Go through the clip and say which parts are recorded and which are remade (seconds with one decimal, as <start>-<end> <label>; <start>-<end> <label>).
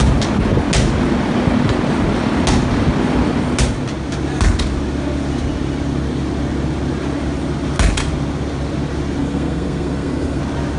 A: 0.0-9.2 recorded; 9.2-10.4 remade; 10.4-10.8 recorded